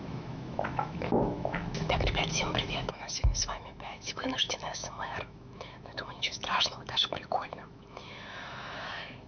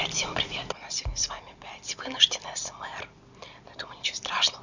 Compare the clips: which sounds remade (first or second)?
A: first